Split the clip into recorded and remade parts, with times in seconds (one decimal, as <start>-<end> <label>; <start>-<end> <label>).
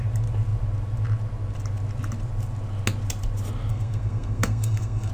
0.0-3.7 recorded; 3.7-5.1 remade